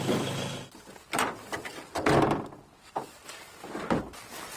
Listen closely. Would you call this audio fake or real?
real